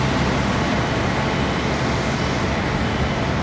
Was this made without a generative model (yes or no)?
yes